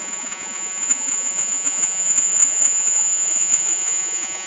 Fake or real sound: fake